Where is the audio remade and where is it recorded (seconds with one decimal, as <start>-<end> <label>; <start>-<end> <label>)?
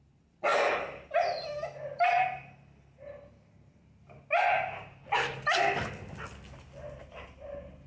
0.0-7.9 recorded